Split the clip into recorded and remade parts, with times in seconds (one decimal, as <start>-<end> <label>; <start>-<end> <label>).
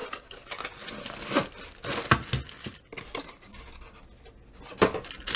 0.0-5.4 recorded